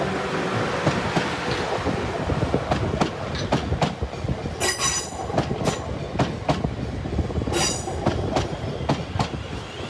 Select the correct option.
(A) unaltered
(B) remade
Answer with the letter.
A